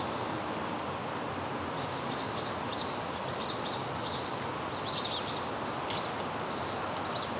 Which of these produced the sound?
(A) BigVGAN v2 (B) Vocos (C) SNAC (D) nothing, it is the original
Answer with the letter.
D